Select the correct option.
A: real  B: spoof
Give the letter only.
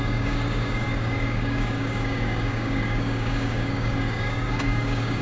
B